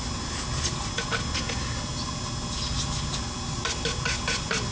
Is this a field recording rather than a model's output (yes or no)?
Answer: yes